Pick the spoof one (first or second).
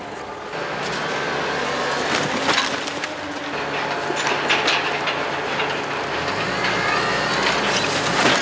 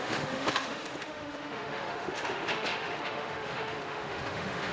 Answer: second